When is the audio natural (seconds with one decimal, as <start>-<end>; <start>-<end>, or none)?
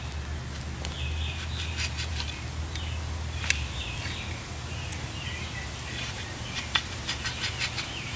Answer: 0.0-4.9; 6.4-8.2